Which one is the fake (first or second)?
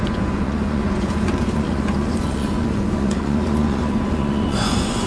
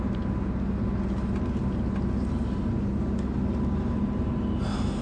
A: first